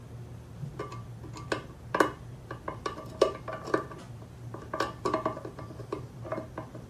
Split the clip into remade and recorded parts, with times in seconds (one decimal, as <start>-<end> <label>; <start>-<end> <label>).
0.0-6.9 recorded